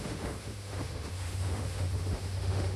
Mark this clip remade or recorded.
remade